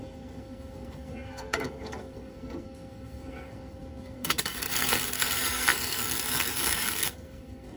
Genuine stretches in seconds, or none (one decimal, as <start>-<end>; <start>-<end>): none